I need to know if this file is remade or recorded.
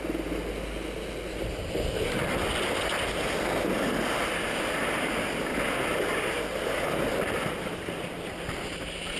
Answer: recorded